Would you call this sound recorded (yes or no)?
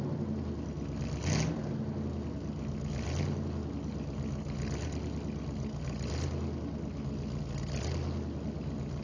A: yes